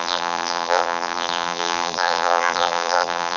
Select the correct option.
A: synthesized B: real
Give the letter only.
A